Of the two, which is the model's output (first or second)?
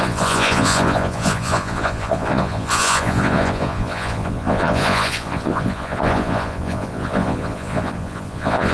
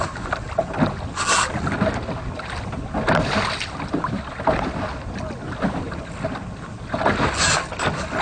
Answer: first